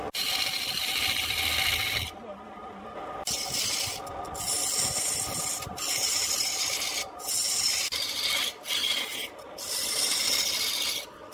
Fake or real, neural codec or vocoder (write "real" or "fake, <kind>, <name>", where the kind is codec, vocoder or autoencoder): real